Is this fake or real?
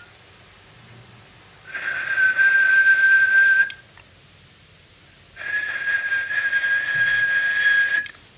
real